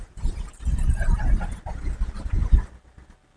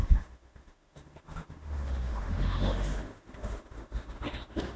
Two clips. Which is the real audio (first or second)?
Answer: first